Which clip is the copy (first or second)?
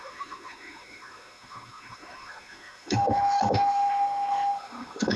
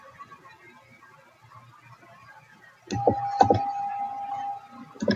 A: first